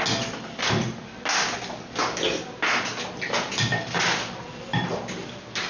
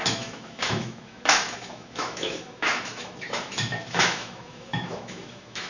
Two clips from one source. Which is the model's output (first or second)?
second